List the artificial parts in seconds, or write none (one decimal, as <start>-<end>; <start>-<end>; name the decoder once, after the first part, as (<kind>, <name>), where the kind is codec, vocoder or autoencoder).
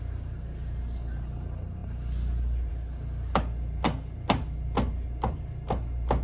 none